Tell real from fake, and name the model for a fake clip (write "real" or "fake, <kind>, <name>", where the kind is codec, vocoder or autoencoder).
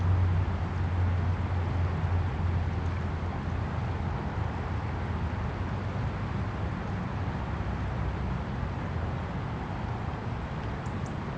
real